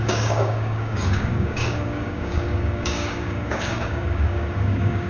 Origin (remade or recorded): remade